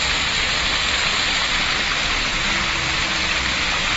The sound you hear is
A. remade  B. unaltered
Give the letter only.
B